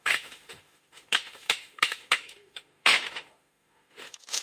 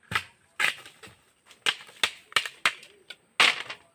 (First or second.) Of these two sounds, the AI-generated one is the first